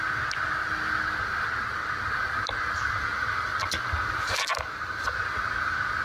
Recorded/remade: recorded